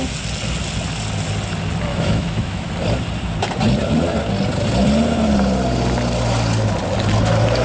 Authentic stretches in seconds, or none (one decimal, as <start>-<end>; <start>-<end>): 0.0-1.9; 2.7-7.6